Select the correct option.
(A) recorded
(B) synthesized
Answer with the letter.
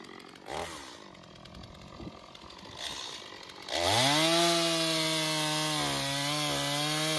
A